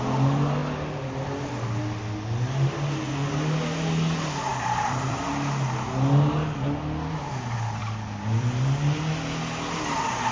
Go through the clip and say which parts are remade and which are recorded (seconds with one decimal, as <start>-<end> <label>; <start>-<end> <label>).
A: 0.0-4.5 recorded; 4.5-5.2 remade; 5.2-7.8 recorded; 7.8-8.6 remade; 8.6-10.3 recorded